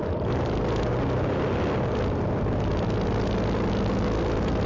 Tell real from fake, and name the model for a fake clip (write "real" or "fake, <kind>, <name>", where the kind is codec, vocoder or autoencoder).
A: fake, vocoder, BigVGAN v2